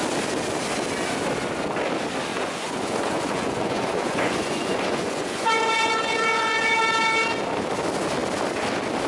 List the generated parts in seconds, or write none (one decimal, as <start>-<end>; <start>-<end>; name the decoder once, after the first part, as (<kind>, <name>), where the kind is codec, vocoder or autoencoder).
2.3-6.8 (vocoder, Vocos)